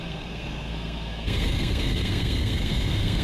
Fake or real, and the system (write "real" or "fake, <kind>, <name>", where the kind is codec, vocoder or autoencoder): fake, codec, SNAC